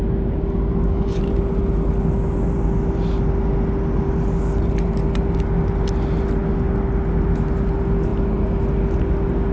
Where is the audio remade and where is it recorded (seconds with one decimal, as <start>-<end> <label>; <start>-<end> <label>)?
0.0-0.7 recorded; 0.7-1.2 remade; 1.2-9.5 recorded